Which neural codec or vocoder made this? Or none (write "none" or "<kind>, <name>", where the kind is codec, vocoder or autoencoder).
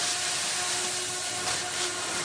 none